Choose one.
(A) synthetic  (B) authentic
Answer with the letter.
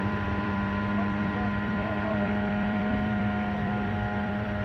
A